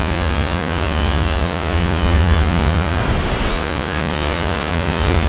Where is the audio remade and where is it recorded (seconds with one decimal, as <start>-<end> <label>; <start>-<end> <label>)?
0.0-3.0 remade; 3.0-3.5 recorded; 3.5-5.3 remade